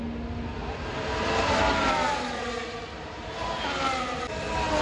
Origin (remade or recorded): recorded